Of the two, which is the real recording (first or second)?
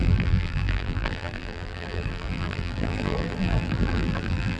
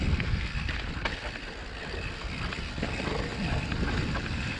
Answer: second